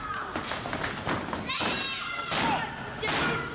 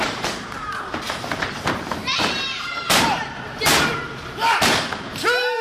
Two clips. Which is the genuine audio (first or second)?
first